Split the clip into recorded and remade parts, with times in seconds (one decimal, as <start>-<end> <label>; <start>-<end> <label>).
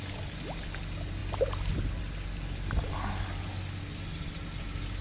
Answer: 0.0-5.0 recorded